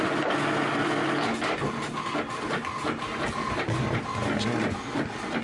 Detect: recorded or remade recorded